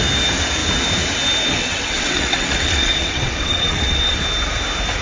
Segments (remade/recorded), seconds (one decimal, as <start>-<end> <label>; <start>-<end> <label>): 0.0-1.6 recorded; 1.6-4.2 remade; 4.2-5.0 recorded